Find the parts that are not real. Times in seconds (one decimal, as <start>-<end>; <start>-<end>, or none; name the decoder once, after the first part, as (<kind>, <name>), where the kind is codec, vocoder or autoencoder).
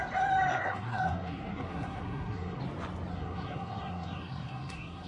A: 0.5-2.6 (codec, SNAC); 3.1-5.1